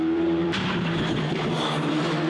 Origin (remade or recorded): remade